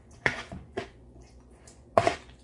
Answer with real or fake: fake